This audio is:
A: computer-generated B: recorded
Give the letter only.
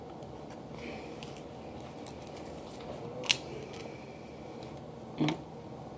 B